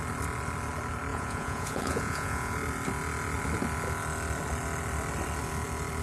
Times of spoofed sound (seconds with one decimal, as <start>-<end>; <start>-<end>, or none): 1.1-2.5